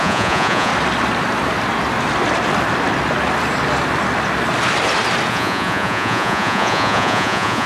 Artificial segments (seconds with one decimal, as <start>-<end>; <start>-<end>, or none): 0.0-0.7; 5.3-7.7